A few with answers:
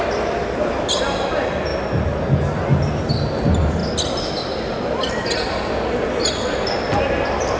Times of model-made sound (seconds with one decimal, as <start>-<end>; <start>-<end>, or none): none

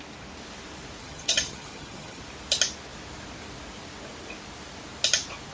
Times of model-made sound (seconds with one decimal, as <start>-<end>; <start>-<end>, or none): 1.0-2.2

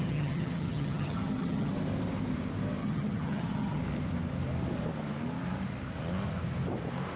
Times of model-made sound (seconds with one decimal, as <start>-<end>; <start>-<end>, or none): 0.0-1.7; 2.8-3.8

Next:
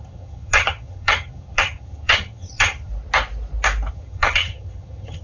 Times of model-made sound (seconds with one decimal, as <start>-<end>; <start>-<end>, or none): 0.0-2.9; 3.9-5.2

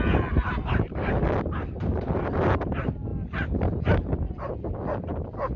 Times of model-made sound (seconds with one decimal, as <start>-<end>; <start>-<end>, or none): none

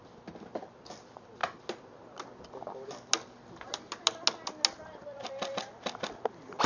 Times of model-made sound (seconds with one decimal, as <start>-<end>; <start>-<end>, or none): none